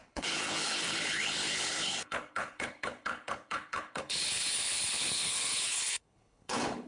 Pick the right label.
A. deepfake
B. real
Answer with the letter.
A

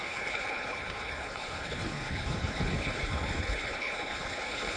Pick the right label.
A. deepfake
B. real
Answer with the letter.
A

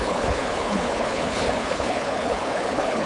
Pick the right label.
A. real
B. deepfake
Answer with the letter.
B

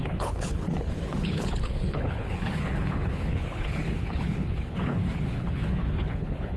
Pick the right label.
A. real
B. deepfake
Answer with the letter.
B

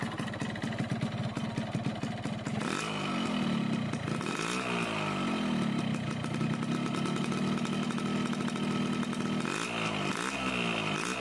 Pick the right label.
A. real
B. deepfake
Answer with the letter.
A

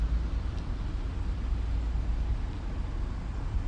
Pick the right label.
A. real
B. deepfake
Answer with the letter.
A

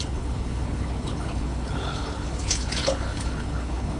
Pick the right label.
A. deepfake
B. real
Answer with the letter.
A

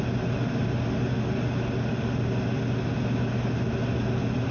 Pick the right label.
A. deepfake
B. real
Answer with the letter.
B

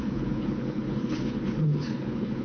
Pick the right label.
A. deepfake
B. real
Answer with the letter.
A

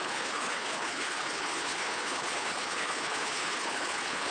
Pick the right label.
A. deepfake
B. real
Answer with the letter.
A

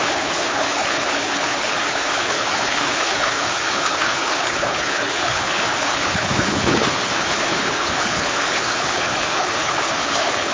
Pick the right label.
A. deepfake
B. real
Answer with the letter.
A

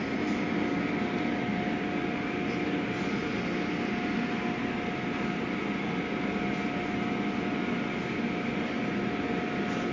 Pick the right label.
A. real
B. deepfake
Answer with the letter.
A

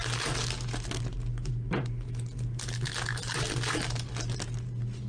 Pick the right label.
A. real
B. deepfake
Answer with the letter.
A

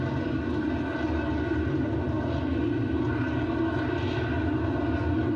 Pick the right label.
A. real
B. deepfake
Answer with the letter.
A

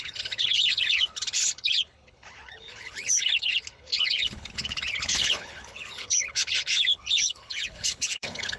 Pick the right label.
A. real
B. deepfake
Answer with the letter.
B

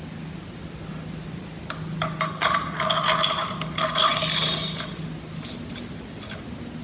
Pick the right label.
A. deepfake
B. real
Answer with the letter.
B